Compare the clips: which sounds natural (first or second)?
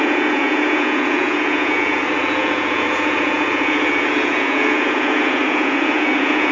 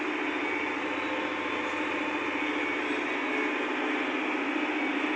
second